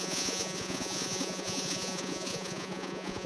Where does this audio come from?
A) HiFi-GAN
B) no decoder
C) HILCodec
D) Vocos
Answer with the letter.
D